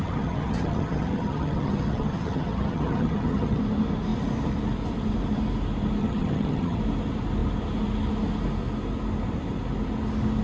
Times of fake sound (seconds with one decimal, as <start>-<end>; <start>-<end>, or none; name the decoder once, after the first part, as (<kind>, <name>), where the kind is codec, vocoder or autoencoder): 0.0-3.6 (vocoder, HiFi-GAN); 6.0-6.8